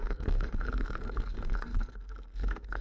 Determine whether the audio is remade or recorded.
remade